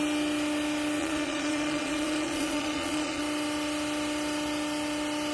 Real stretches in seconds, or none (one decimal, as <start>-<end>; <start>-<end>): 0.0-1.0; 3.2-5.3